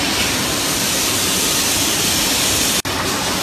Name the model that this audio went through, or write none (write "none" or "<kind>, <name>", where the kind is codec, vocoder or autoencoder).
none